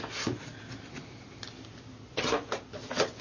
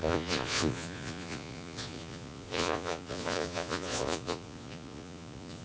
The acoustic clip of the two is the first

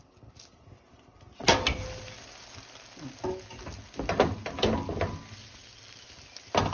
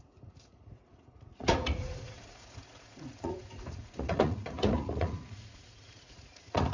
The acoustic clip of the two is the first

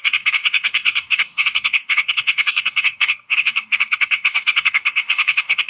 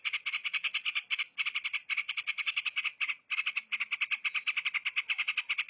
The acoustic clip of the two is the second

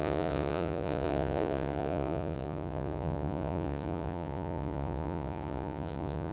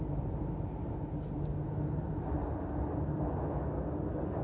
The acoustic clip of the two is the second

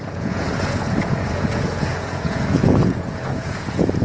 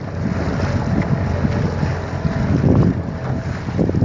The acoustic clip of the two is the second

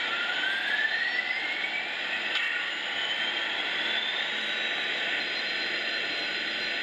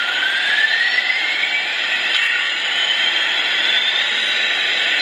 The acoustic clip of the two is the first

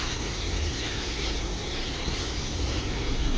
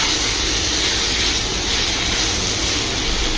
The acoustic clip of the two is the second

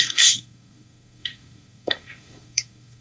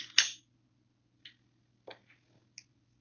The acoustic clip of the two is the second